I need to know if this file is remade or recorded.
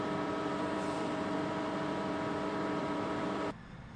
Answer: remade